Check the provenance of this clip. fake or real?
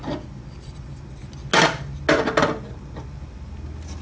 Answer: real